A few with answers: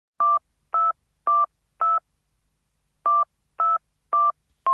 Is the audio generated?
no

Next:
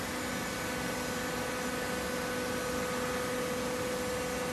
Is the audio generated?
no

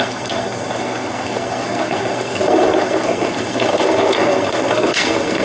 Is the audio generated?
yes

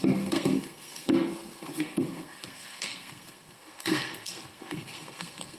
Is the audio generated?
yes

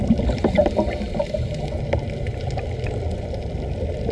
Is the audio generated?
no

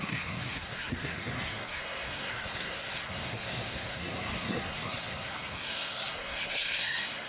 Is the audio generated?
yes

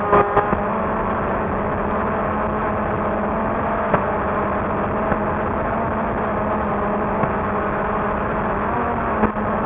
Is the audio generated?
no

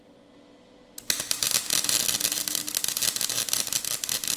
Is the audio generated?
no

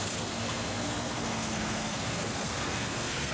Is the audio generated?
yes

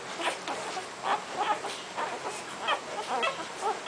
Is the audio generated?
no